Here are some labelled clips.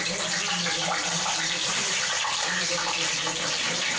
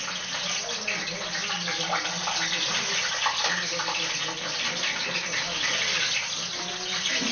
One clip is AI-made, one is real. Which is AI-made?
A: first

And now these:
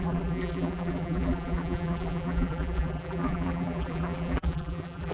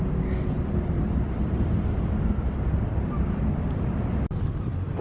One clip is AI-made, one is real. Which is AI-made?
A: first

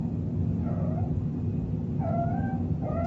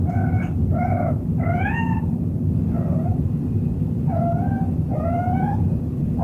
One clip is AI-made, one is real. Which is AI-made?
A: second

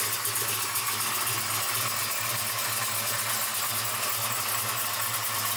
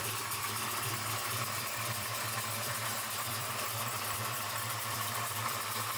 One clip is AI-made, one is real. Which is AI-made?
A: second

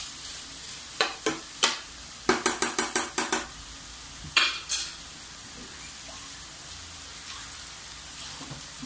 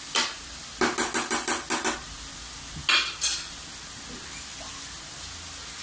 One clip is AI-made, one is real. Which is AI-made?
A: first